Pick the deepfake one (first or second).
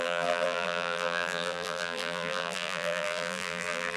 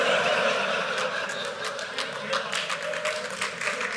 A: first